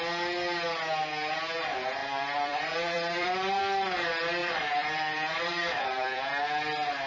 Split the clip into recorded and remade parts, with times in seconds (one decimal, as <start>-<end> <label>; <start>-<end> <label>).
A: 0.0-2.0 recorded; 2.0-3.6 remade; 3.6-4.4 recorded; 4.4-6.2 remade; 6.2-7.1 recorded